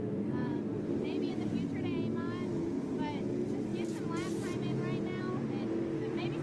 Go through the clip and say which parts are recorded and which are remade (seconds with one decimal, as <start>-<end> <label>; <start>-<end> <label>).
0.0-0.4 recorded; 0.4-1.3 remade; 1.3-6.4 recorded